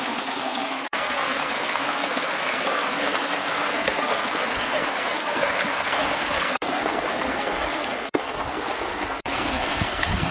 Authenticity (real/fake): fake